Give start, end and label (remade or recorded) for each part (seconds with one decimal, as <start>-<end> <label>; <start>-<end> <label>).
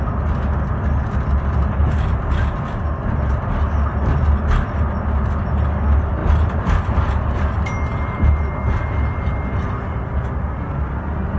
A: 0.0-6.2 recorded; 6.2-6.8 remade; 6.8-7.9 recorded; 7.9-8.4 remade; 8.4-11.4 recorded